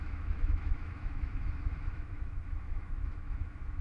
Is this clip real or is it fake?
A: fake